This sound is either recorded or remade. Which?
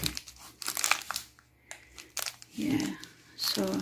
recorded